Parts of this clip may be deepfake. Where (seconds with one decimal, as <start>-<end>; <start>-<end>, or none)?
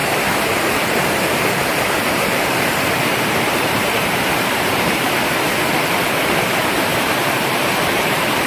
0.0-5.1; 6.9-8.5